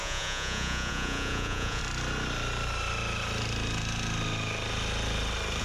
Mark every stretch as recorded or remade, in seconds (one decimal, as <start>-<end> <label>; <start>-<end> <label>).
0.0-1.8 remade; 1.8-5.6 recorded